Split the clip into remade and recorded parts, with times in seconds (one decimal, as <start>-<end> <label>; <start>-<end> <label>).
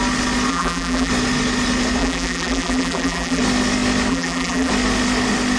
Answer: 0.0-0.5 recorded; 0.5-1.1 remade; 1.1-2.0 recorded; 2.0-3.4 remade; 3.4-4.1 recorded; 4.1-4.7 remade; 4.7-5.6 recorded